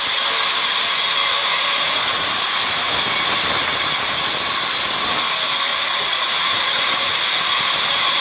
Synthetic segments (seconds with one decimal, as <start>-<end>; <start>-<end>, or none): 1.4-2.9; 5.7-7.2